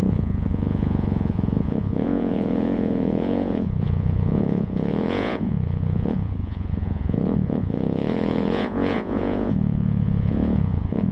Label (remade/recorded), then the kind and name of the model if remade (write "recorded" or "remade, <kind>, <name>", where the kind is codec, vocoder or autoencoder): remade, vocoder, Vocos